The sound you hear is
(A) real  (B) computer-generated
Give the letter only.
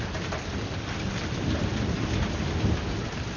A